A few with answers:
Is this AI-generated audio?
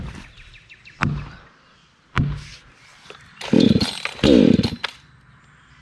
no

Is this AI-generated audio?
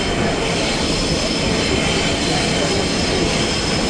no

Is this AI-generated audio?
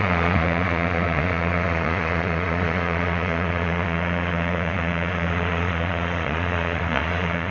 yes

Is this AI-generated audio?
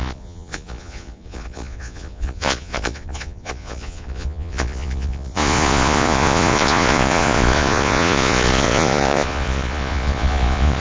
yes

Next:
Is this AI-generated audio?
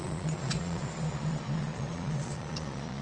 yes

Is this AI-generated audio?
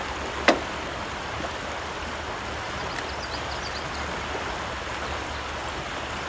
no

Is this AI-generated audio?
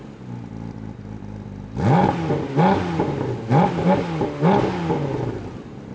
no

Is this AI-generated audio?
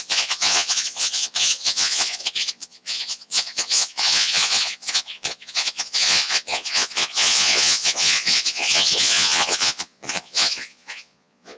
yes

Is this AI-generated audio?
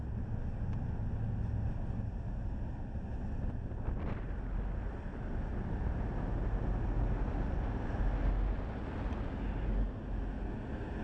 no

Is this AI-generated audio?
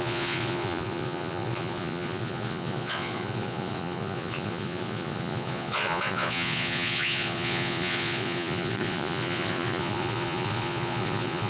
yes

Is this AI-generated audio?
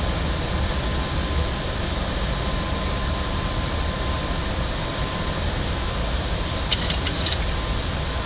no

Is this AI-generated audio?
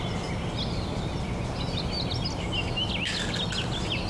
no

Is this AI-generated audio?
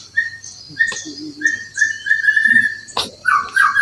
no